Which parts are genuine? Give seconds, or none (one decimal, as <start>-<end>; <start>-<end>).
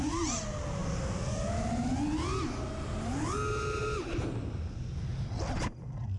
0.0-6.2